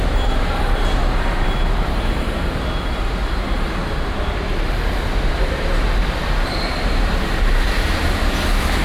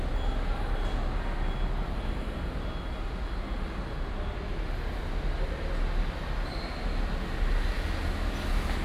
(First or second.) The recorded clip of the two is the second